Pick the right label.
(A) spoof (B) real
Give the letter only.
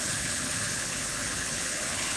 A